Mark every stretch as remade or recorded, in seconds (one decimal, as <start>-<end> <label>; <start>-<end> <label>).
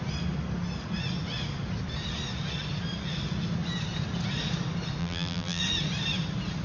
0.0-5.0 recorded; 5.0-5.6 remade; 5.6-6.6 recorded